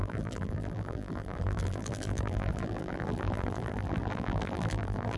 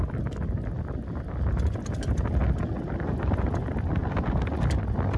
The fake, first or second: first